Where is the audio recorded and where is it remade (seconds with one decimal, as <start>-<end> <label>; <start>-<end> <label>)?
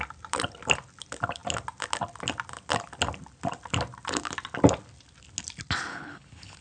0.0-5.9 recorded; 5.9-6.6 remade